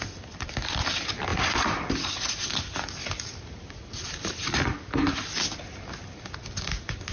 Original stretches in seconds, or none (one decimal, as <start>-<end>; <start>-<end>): 0.0-7.1